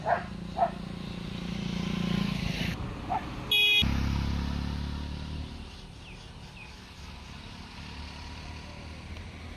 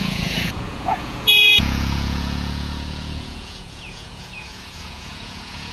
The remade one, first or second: second